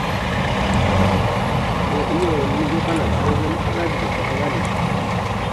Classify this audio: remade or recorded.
recorded